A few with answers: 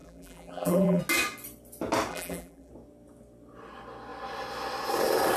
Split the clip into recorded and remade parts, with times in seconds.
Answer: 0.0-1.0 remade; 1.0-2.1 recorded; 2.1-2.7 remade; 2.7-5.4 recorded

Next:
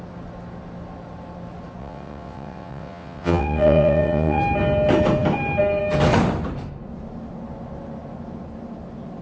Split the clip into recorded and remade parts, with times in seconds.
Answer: 0.0-1.8 recorded; 1.8-4.4 remade; 4.4-9.2 recorded

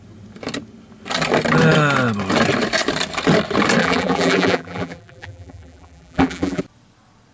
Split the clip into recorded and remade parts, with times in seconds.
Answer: 0.0-3.8 recorded; 3.8-6.6 remade; 6.6-7.3 recorded

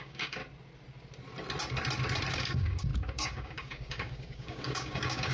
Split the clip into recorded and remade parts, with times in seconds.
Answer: 0.0-0.4 remade; 0.4-2.3 recorded; 2.3-5.3 remade